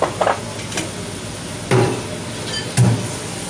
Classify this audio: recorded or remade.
recorded